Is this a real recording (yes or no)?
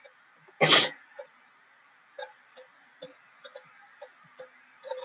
yes